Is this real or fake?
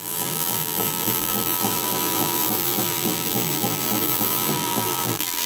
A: fake